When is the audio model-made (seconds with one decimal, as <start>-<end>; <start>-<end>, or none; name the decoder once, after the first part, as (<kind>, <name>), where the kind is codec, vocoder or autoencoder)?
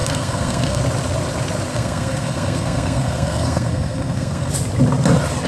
0.0-0.8 (codec, SNAC); 1.7-4.5